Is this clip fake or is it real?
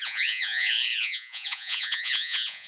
fake